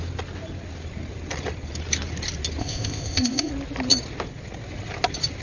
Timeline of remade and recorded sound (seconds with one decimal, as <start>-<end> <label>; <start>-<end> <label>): 0.0-2.6 recorded; 2.6-3.5 remade; 3.5-5.4 recorded